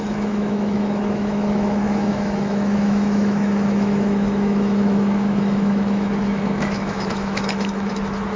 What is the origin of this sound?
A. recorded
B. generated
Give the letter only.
B